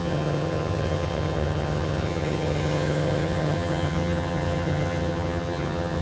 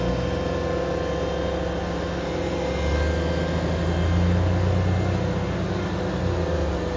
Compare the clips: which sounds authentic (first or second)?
second